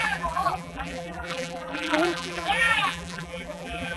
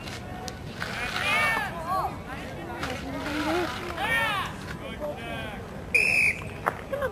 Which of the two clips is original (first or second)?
second